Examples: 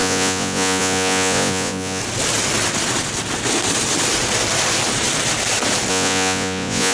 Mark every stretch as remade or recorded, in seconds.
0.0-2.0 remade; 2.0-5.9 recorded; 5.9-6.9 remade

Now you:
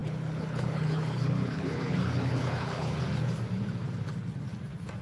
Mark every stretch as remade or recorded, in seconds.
0.0-3.0 remade; 3.0-5.0 recorded

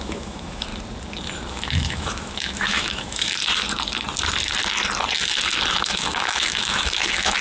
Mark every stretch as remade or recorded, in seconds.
0.0-0.7 remade; 0.7-1.5 recorded; 1.5-3.4 remade; 3.4-5.7 recorded; 5.7-7.4 remade